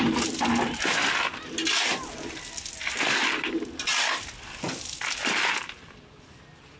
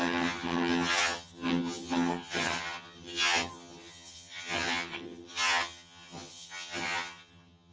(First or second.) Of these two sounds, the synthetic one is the second